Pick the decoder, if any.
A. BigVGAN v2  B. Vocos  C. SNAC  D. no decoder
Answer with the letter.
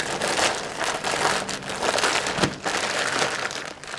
D